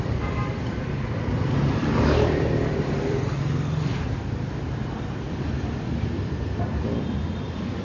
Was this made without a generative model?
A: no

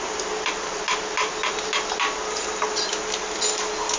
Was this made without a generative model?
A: yes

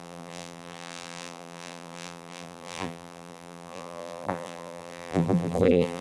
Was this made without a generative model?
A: no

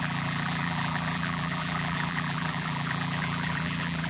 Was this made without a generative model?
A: no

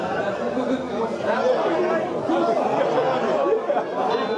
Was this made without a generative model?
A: yes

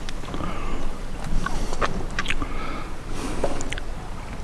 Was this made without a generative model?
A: yes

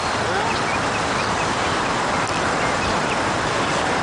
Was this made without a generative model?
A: yes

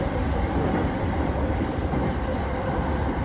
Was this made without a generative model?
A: no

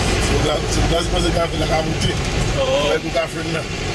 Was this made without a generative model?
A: no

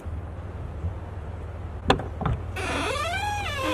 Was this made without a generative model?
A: yes